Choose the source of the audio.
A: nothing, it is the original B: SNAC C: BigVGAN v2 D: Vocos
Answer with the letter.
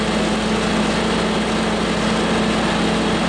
A